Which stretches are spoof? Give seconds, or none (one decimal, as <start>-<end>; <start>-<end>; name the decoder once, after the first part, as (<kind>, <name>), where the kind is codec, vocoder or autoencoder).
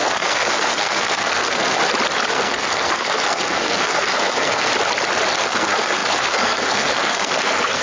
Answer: 0.0-1.8 (codec, SNAC); 2.3-4.7; 5.4-7.8